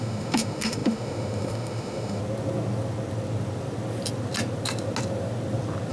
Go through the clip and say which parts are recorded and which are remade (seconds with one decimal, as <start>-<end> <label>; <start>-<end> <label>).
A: 0.0-2.2 remade; 2.2-5.9 recorded